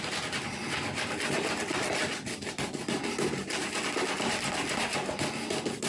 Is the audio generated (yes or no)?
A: no